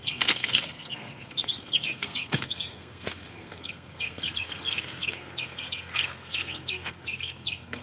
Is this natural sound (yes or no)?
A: no